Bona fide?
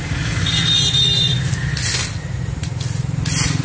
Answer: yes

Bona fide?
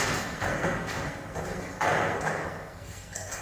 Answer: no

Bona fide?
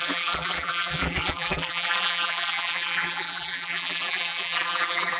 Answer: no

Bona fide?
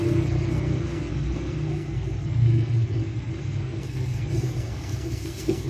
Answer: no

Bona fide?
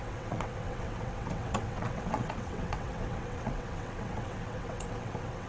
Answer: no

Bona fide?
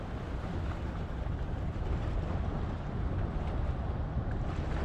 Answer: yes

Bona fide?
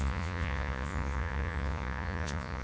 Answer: no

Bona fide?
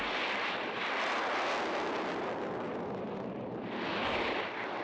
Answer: yes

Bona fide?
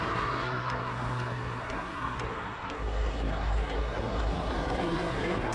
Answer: no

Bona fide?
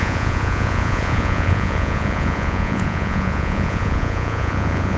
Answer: no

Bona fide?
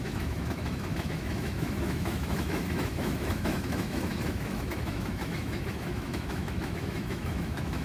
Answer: no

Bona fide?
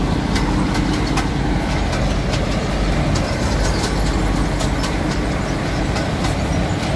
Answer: yes